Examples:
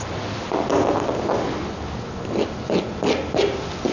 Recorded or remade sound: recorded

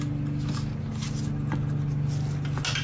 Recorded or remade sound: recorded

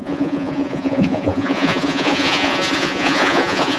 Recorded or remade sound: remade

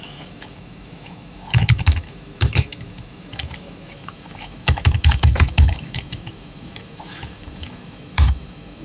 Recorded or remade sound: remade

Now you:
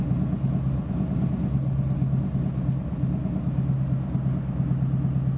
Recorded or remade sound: recorded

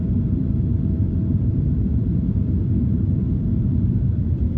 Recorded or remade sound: remade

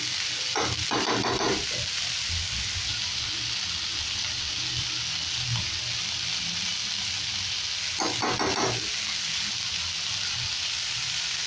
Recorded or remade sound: recorded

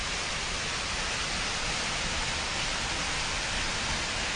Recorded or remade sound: recorded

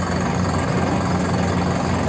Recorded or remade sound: recorded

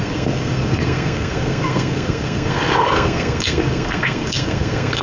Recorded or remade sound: remade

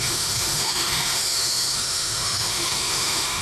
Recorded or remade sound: remade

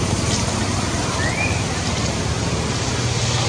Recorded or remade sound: recorded